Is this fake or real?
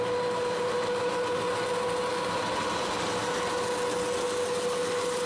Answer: real